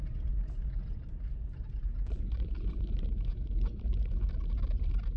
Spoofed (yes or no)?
no